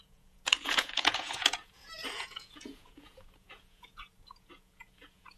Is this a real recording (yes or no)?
no